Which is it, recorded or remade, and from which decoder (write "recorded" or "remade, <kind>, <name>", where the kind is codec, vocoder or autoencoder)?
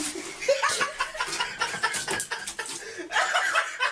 recorded